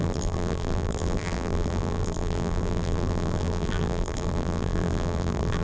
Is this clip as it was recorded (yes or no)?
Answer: no